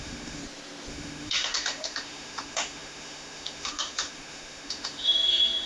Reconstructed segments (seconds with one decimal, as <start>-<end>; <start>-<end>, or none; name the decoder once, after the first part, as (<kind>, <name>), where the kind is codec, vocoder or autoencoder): 0.0-0.4 (autoencoder, DAC-VAE); 0.9-5.7